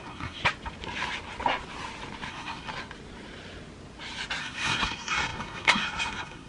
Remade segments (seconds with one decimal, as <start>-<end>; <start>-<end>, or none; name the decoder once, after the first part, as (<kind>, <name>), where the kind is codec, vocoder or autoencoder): 0.0-0.4 (codec, SNAC); 2.3-2.7; 4.4-6.5